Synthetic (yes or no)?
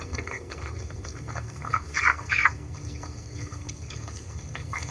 yes